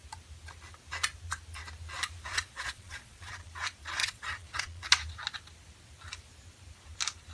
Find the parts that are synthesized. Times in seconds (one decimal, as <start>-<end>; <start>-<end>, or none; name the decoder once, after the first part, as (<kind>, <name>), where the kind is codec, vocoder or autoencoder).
2.3-3.5 (vocoder, Vocos); 4.0-4.8